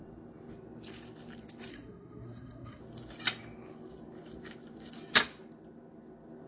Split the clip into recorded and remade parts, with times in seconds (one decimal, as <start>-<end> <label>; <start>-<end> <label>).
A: 0.0-1.7 recorded; 1.7-2.8 remade; 2.8-6.5 recorded